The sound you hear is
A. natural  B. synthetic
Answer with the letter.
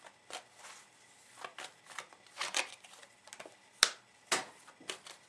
A